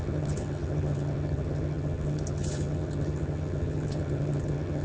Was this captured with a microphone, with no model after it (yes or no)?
no